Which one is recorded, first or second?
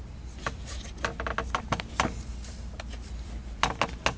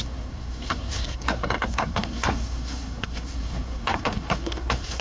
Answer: first